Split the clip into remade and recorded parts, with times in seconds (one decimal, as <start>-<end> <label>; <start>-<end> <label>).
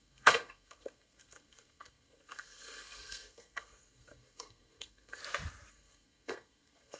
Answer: 0.0-5.2 remade; 5.2-5.7 recorded; 5.7-7.0 remade